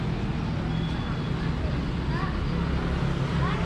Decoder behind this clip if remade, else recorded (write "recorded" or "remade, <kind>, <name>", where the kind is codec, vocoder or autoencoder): recorded